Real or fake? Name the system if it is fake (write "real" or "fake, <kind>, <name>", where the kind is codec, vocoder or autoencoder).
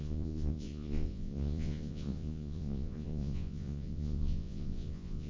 fake, vocoder, Vocos